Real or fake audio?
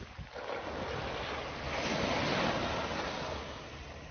real